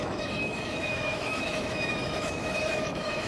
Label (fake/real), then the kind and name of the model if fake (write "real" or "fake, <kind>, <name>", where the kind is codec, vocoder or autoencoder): fake, autoencoder, DAC-VAE